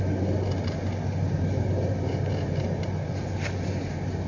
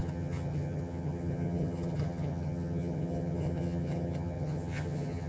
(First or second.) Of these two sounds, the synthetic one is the second